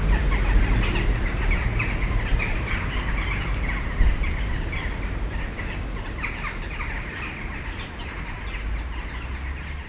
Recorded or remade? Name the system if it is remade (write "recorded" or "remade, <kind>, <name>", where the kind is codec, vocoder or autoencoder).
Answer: recorded